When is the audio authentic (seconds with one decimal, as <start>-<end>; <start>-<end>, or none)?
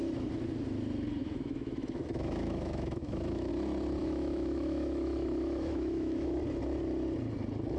0.0-1.2; 3.5-4.0; 6.4-7.8